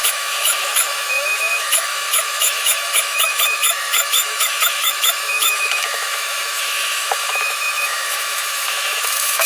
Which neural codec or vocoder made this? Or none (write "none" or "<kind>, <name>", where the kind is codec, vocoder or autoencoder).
autoencoder, DAC-VAE